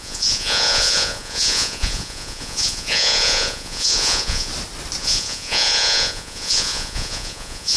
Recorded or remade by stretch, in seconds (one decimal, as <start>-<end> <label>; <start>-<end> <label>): 0.0-4.5 remade; 4.5-5.0 recorded; 5.0-7.8 remade